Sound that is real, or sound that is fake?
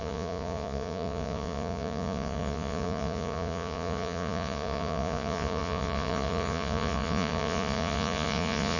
fake